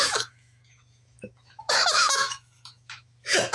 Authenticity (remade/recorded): remade